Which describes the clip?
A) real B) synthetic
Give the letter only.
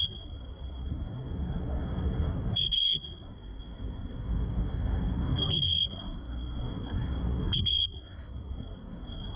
B